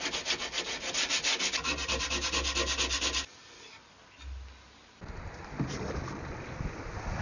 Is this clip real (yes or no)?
yes